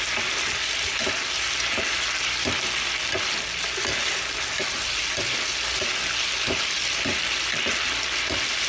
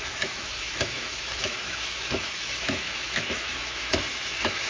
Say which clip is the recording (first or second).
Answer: first